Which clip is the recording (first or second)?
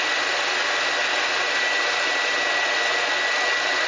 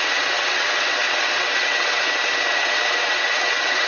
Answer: first